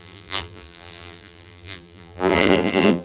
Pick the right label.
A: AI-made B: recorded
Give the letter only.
A